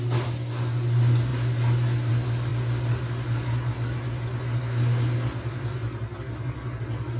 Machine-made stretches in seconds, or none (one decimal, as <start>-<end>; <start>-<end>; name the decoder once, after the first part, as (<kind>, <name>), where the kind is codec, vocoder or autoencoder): none